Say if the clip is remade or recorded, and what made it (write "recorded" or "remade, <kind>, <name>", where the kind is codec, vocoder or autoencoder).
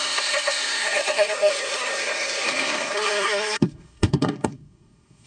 remade, codec, SNAC